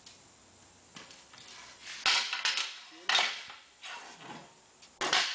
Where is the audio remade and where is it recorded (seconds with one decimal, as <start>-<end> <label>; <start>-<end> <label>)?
0.0-5.3 recorded